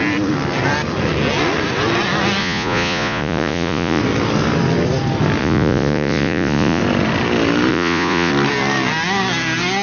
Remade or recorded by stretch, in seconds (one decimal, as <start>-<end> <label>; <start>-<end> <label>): 0.0-2.4 recorded; 2.4-4.0 remade; 4.0-5.4 recorded; 5.4-6.8 remade; 6.8-7.7 recorded; 7.7-8.3 remade; 8.3-9.8 recorded